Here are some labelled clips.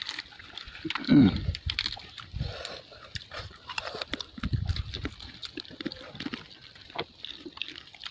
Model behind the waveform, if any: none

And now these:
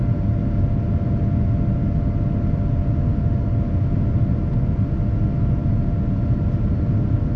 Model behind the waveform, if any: none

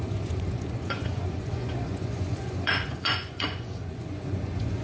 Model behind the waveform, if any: vocoder, Vocos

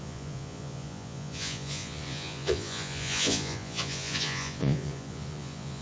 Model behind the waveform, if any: vocoder, Vocos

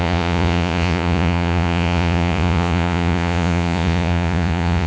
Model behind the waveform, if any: vocoder, Vocos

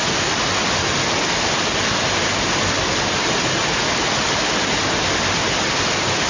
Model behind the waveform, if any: none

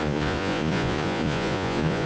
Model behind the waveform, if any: vocoder, Vocos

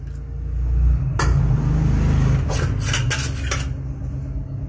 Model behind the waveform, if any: none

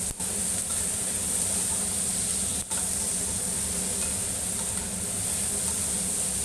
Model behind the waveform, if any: none